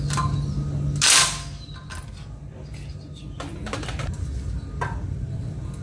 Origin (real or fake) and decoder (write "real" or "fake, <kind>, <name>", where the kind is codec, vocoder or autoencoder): real